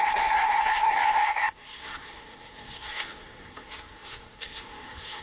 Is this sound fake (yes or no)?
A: yes